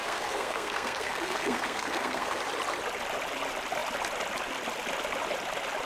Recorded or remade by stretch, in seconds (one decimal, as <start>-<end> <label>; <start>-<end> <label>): 0.0-2.4 remade; 2.4-5.9 recorded